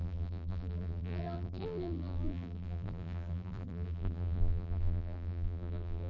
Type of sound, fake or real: fake